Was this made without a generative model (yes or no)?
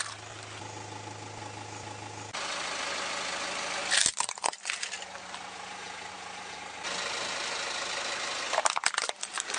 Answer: yes